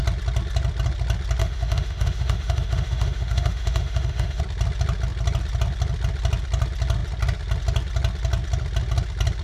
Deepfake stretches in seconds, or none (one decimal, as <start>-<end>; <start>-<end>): 1.4-4.4